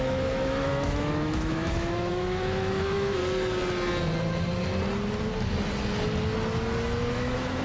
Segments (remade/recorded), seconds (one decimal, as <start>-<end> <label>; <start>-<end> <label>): 0.0-3.2 remade; 3.2-7.1 recorded; 7.1-7.6 remade